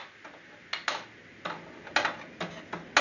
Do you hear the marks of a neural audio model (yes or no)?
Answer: no